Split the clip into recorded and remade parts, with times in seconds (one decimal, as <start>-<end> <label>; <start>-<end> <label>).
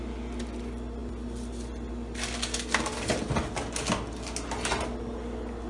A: 0.0-5.7 recorded